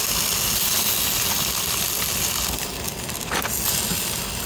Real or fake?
real